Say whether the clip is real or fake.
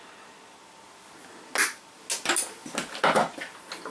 real